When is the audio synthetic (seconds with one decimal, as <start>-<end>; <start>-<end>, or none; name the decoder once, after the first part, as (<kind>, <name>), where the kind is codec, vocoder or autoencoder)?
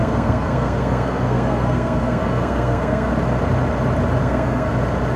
0.0-3.1 (codec, SNAC); 4.2-4.7